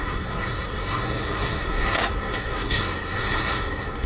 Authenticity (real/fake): fake